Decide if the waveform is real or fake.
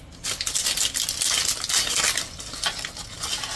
real